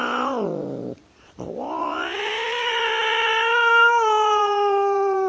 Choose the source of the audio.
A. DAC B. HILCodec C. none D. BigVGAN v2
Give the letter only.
D